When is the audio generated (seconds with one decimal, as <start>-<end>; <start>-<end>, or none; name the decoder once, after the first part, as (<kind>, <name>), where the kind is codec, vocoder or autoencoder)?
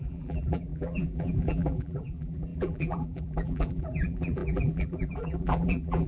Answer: 0.0-6.1 (vocoder, BigVGAN v2)